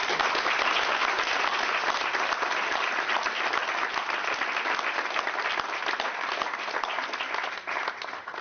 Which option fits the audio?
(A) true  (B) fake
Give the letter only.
A